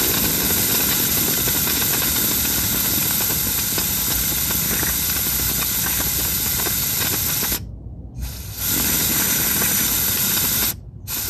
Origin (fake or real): real